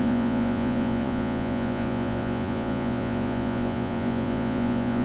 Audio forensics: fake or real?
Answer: fake